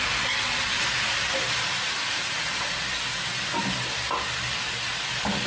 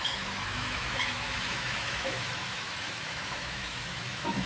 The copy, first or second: second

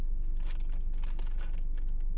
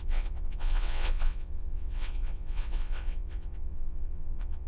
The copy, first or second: second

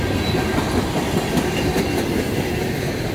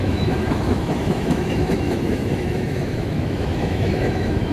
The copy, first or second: second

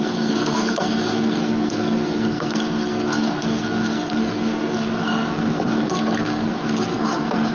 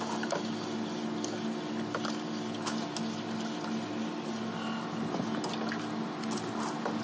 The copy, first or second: first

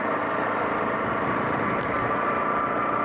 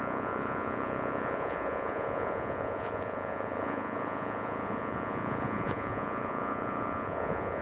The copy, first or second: second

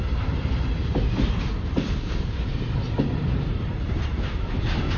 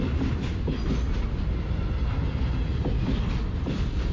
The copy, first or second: first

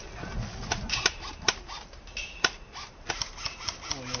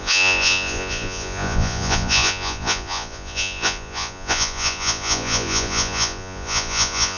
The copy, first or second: second